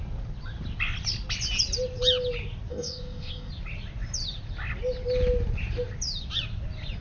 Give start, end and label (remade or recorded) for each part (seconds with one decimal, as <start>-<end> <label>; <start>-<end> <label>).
0.0-2.7 recorded; 2.7-3.5 remade; 3.5-7.0 recorded